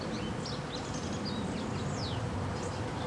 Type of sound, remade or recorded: recorded